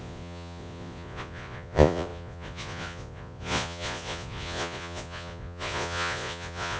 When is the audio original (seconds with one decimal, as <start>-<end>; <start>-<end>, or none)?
none